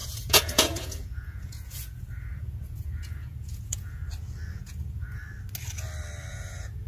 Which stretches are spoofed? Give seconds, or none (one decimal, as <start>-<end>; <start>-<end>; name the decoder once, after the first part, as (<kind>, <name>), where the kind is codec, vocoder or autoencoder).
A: 0.0-4.0 (vocoder, Vocos); 4.5-5.2; 6.3-6.9